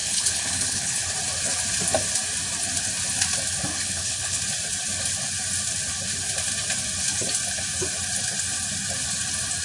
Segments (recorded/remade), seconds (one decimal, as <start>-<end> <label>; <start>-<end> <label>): 0.0-1.1 remade; 1.1-3.7 recorded; 3.7-4.4 remade; 4.4-9.6 recorded